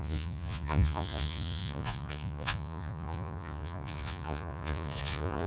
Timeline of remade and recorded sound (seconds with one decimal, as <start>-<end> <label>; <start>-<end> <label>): 0.0-5.5 remade